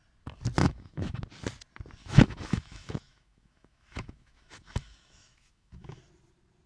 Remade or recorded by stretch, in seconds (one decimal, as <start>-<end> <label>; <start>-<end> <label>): 0.0-0.6 recorded; 0.6-1.2 remade; 1.2-2.0 recorded; 2.0-6.0 remade; 6.0-6.7 recorded